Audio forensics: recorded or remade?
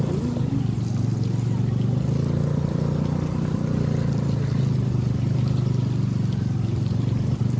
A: recorded